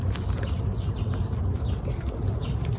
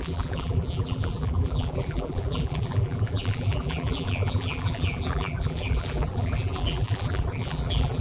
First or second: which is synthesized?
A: second